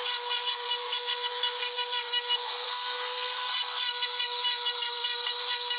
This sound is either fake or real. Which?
fake